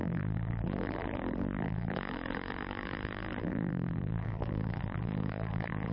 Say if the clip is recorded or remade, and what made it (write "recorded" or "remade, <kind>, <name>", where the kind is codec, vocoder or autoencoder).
remade, vocoder, BigVGAN v2